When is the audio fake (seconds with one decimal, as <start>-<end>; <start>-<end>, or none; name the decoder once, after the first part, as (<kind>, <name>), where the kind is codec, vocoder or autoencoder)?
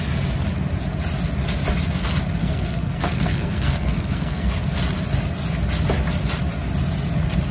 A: 2.4-4.5 (codec, SNAC)